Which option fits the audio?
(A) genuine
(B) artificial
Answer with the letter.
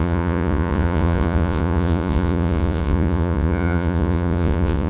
B